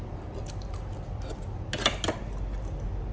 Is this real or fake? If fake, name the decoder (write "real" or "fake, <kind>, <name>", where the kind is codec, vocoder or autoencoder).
real